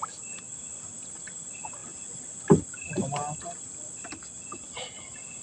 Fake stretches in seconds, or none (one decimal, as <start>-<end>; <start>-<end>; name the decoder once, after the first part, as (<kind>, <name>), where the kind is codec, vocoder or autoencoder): none